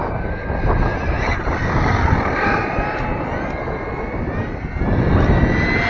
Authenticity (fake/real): real